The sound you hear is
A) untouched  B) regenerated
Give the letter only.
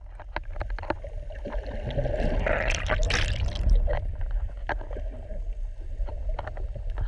A